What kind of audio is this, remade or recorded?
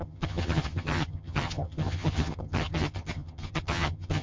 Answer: remade